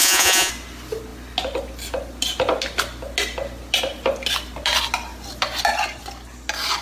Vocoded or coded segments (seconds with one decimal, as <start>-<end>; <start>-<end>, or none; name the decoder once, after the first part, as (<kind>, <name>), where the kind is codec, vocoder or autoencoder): 0.0-0.5 (vocoder, Vocos)